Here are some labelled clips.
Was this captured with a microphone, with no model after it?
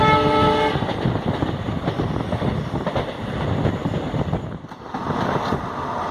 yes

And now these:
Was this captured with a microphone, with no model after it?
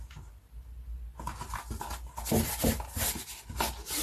yes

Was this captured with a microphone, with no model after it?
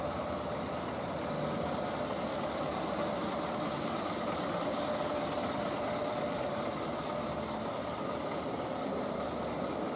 yes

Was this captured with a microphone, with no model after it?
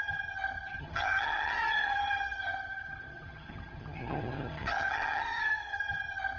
no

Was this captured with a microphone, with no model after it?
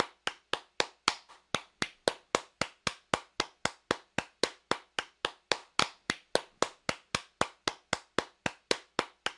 yes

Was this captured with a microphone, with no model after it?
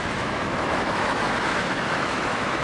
no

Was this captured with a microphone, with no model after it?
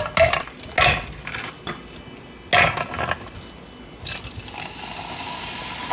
yes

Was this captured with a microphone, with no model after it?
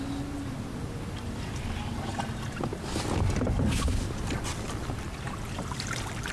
yes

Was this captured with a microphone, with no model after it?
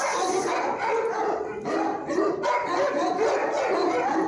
yes